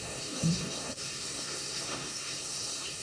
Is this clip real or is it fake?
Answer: fake